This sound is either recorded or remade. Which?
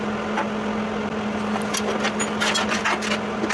recorded